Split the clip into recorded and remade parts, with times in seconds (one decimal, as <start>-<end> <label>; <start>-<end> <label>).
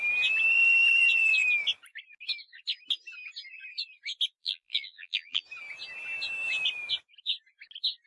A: 0.0-4.4 recorded; 4.4-5.4 remade; 5.4-8.1 recorded